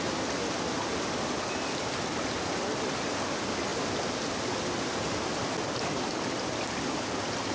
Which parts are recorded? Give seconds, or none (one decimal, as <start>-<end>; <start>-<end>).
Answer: 0.0-7.5